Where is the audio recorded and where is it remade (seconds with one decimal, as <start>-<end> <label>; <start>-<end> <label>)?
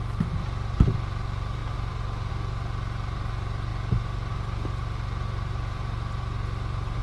0.0-3.7 remade; 3.7-4.3 recorded; 4.3-7.0 remade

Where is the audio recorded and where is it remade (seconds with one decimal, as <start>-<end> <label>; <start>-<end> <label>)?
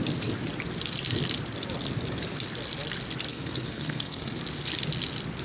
0.0-3.3 recorded; 3.3-4.4 remade; 4.4-5.4 recorded